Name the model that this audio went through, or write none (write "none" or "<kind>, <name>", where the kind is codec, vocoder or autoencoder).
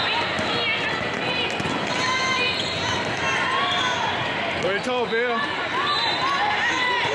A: none